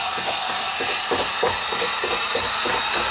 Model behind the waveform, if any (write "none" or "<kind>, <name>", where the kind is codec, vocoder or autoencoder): none